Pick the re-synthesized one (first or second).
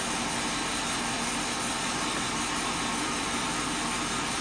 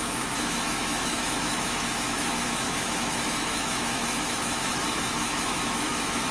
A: second